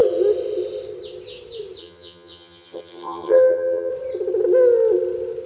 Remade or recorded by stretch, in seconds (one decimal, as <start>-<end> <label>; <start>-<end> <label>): 0.0-1.8 recorded; 1.8-3.9 remade; 3.9-5.5 recorded